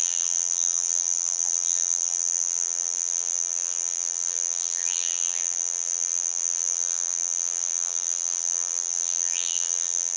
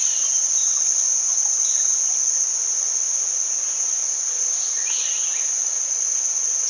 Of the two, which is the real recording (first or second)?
second